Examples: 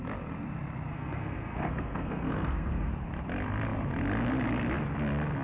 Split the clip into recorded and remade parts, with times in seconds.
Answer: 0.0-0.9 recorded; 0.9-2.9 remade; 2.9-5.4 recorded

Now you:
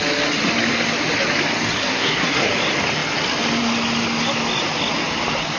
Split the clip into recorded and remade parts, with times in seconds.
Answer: 0.0-1.8 recorded; 1.8-2.5 remade; 2.5-5.6 recorded

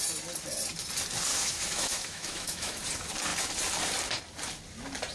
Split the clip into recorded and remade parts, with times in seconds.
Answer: 0.0-1.3 recorded; 1.3-2.8 remade; 2.8-5.1 recorded

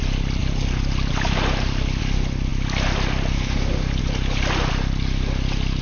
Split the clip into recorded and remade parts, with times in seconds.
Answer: 0.0-5.8 recorded

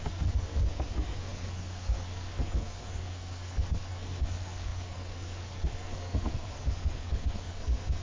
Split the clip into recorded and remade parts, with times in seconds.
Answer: 0.0-8.0 remade

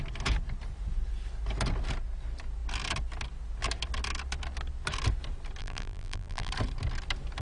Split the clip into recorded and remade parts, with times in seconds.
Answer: 0.0-5.6 recorded; 5.6-6.5 remade; 6.5-7.4 recorded